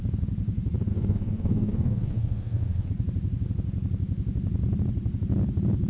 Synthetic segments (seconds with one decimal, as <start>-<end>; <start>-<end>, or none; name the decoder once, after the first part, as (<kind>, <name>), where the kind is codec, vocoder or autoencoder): 0.9-2.9 (codec, SNAC)